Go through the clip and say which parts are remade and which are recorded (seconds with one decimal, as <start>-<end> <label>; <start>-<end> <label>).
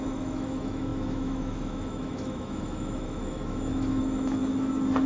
0.0-4.4 remade; 4.4-5.1 recorded